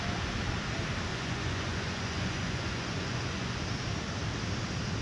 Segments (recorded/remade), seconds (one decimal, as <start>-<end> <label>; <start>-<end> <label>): 0.0-1.1 recorded; 1.1-3.6 remade; 3.6-5.0 recorded